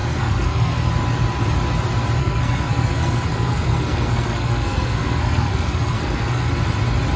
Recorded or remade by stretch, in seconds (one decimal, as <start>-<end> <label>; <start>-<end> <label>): 0.0-0.9 remade; 0.9-2.2 recorded; 2.2-6.5 remade; 6.5-7.2 recorded